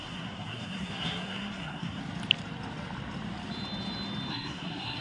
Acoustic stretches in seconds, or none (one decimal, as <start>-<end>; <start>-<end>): 2.0-4.3